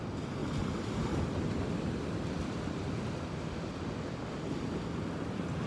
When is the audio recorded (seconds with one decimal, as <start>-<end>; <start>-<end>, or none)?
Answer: 0.0-5.7